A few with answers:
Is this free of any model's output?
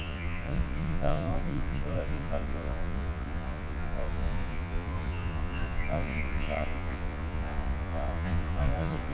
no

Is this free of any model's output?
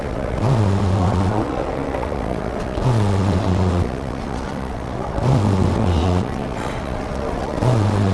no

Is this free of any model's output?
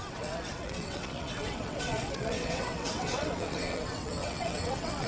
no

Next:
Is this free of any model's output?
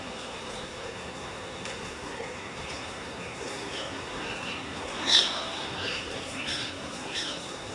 no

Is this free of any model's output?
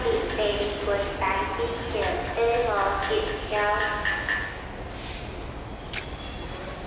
yes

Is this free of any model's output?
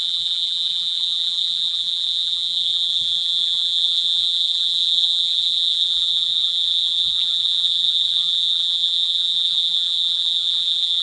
no